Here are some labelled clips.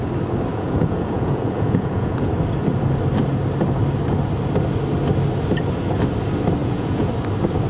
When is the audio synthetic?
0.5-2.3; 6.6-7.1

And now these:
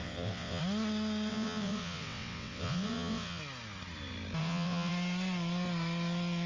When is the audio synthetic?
0.0-0.6; 1.3-3.4; 4.4-4.9

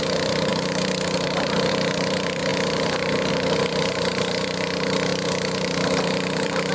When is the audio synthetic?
0.0-6.7

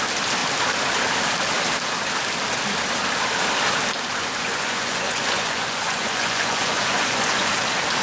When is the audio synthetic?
4.2-7.5

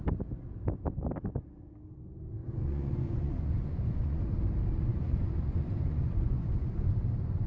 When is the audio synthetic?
2.4-4.2; 4.9-6.7

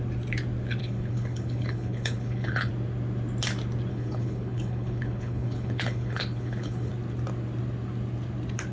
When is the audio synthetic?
0.8-2.7; 3.9-6.9

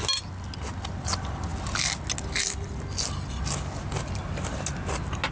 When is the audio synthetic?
none

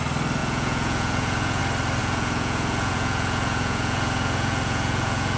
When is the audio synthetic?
0.4-1.6; 2.0-5.4